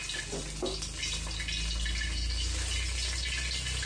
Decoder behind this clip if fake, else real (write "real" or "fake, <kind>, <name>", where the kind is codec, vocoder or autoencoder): real